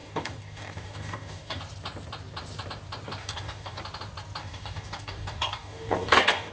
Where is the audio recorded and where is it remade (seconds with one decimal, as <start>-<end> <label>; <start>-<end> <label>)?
0.0-1.6 remade; 1.6-3.2 recorded; 3.2-3.8 remade; 3.8-4.4 recorded; 4.4-6.5 remade